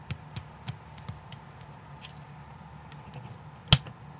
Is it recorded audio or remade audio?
recorded